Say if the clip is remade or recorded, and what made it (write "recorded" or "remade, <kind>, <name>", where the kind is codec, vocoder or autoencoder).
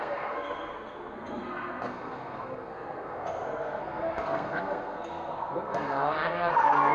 remade, codec, SNAC